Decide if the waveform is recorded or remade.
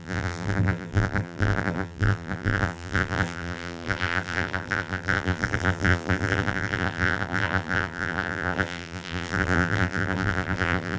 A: remade